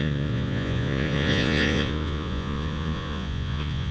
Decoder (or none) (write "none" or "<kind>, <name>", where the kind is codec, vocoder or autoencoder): vocoder, Vocos